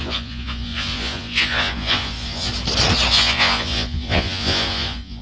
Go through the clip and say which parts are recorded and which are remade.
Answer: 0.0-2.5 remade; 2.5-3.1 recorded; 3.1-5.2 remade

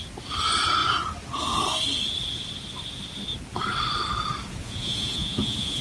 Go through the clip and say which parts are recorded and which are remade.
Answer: 0.0-4.6 recorded; 4.6-5.8 remade

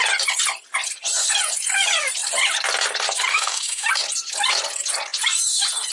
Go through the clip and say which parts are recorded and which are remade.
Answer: 0.0-3.3 recorded; 3.3-3.9 remade; 3.9-5.9 recorded